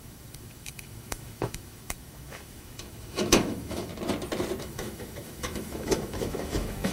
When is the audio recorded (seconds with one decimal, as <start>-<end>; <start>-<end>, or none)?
3.9-4.6